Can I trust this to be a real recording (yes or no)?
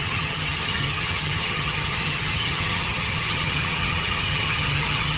no